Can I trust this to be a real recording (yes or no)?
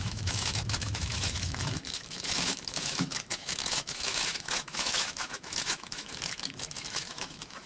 no